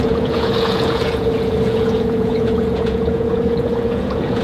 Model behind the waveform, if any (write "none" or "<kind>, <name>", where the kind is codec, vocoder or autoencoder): vocoder, Vocos